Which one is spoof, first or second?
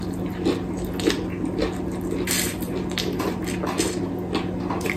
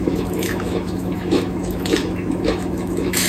second